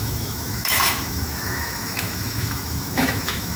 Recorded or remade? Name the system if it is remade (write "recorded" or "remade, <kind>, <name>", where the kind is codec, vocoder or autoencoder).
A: remade, autoencoder, DAC-VAE